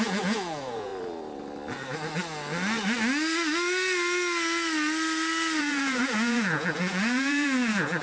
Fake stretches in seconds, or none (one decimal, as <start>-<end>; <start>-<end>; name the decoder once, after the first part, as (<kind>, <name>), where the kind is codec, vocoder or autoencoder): 0.0-0.9 (vocoder, Vocos); 5.6-8.0